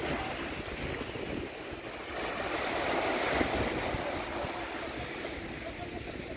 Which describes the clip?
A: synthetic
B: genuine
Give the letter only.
B